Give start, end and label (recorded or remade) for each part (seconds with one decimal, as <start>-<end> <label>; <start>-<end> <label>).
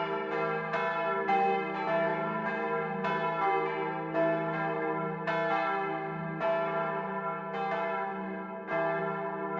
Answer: 0.0-9.6 recorded